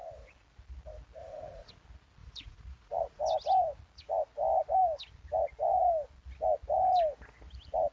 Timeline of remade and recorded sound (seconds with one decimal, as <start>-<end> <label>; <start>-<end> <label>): 0.0-1.2 recorded; 1.2-1.7 remade; 1.7-2.2 recorded; 2.2-3.2 remade; 3.2-7.9 recorded